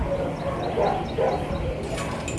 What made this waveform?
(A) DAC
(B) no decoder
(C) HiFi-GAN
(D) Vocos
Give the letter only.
B